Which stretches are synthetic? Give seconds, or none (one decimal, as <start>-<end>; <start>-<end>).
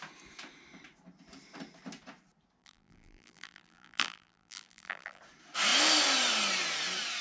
2.6-5.2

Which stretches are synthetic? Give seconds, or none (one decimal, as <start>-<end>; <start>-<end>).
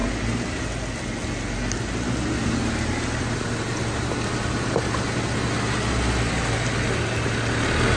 none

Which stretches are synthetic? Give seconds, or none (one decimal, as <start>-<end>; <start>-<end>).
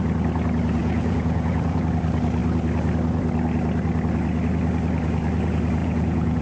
0.8-1.8; 5.8-6.4